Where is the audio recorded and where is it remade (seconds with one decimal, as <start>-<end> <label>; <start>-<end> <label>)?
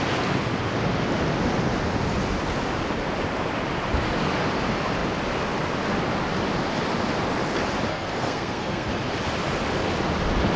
0.0-7.9 recorded; 7.9-8.9 remade; 8.9-10.6 recorded